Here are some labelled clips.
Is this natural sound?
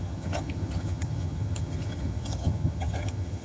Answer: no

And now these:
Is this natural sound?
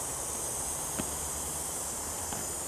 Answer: no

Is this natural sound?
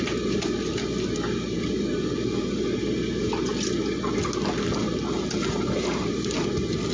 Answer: yes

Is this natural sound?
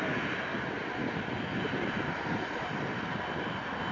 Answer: yes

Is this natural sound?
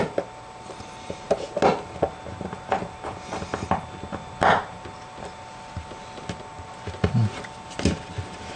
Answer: yes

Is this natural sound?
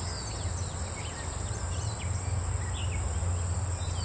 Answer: yes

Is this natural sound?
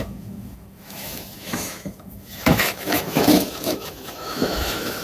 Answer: no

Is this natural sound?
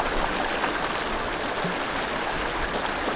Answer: yes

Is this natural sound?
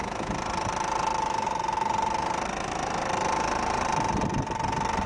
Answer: yes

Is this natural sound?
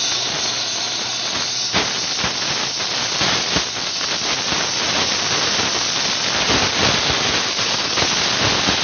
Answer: yes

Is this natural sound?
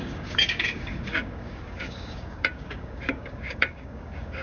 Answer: no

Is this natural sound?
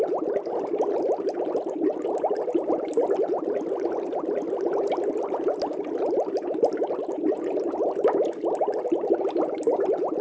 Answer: yes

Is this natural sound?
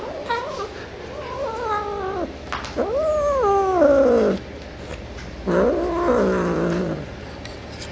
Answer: yes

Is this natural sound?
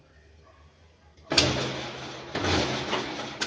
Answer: yes